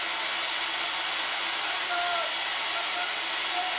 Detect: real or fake real